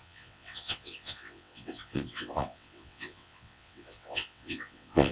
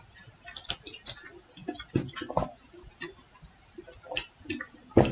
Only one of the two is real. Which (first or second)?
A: second